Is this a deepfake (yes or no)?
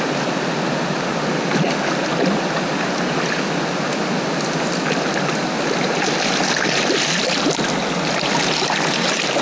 no